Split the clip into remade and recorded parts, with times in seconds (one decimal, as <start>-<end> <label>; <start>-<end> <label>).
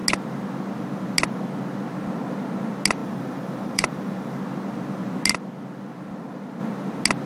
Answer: 0.0-3.0 recorded; 3.0-4.4 remade; 4.4-7.3 recorded